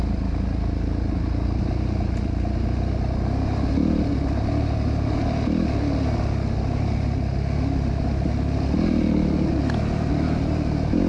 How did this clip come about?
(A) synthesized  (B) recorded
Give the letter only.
B